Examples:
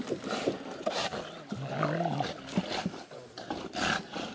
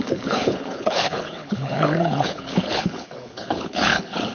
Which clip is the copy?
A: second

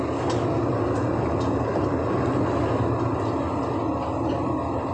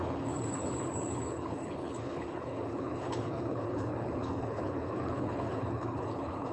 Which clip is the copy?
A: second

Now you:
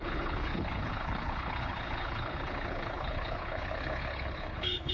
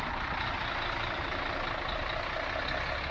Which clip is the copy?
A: first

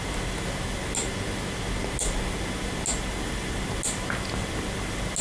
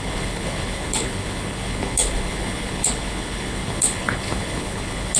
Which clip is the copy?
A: second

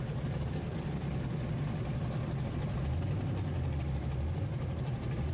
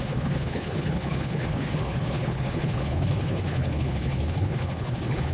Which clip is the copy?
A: second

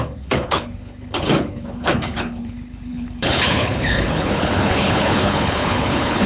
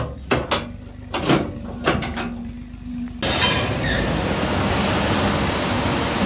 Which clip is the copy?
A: first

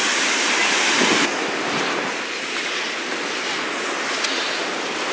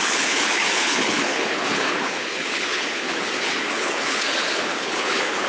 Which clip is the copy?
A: second